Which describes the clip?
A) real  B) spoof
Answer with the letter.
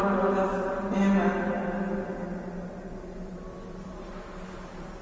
A